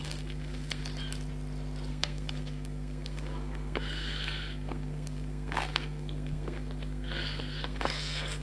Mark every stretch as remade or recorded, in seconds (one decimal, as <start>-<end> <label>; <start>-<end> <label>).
0.0-0.8 remade; 0.8-1.9 recorded; 1.9-8.4 remade